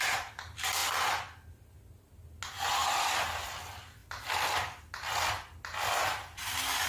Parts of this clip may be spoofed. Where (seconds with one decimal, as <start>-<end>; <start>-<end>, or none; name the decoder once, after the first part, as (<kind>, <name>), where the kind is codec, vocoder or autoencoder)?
4.0-4.8 (vocoder, BigVGAN v2)